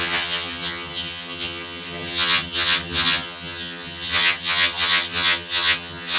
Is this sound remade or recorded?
remade